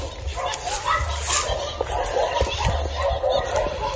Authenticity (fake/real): real